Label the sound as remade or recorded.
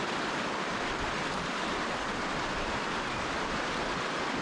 remade